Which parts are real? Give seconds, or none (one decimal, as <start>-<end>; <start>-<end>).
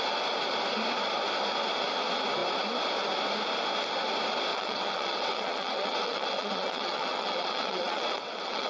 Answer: 0.0-4.5